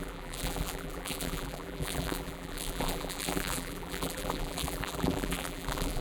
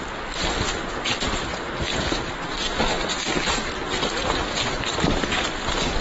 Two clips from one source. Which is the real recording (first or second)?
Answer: second